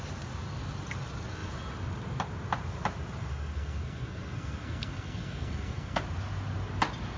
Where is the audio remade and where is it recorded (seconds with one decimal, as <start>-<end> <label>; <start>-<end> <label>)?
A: 0.0-3.3 recorded; 3.3-6.0 remade; 6.0-7.2 recorded